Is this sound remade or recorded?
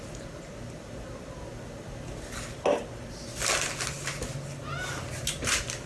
recorded